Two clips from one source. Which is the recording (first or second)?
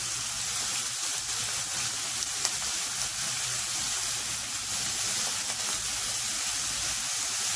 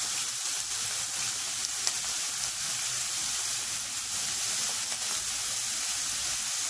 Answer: first